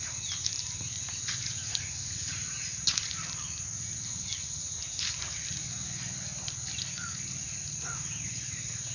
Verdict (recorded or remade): recorded